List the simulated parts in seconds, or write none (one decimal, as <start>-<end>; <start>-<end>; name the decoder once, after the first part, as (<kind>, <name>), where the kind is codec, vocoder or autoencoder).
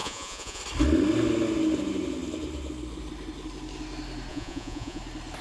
0.0-0.6 (vocoder, Vocos); 4.3-5.0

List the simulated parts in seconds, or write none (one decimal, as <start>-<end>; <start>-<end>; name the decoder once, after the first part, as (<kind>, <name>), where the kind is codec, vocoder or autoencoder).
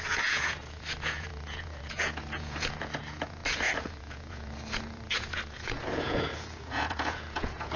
0.0-7.8 (vocoder, Vocos)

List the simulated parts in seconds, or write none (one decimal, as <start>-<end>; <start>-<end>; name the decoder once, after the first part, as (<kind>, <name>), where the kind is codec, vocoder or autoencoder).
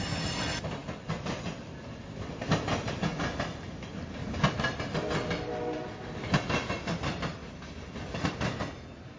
none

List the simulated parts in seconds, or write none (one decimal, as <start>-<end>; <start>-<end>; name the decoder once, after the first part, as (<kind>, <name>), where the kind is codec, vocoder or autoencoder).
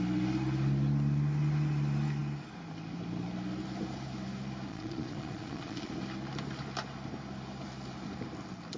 4.7-5.9 (vocoder, Vocos)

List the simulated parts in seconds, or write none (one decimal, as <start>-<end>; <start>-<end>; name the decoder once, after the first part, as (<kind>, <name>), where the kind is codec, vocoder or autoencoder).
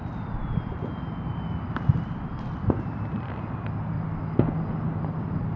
none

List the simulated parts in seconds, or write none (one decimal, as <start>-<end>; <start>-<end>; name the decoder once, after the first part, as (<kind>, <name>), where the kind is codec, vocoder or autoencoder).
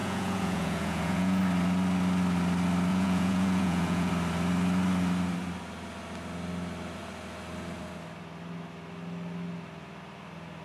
0.0-1.4 (vocoder, Vocos); 2.9-4.1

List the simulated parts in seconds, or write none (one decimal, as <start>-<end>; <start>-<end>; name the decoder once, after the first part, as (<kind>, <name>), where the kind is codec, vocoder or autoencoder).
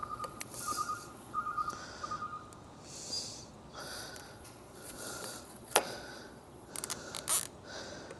0.0-1.7 (vocoder, Vocos); 3.8-6.7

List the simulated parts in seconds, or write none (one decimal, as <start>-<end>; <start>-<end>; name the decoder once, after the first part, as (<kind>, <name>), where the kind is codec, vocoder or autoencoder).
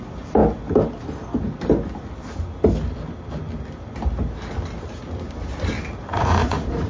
6.1-6.9 (vocoder, Vocos)